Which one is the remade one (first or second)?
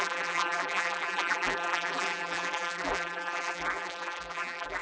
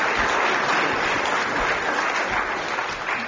first